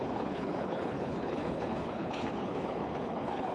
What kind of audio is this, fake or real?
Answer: fake